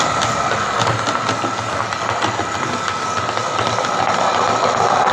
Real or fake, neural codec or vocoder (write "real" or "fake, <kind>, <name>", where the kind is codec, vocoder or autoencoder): real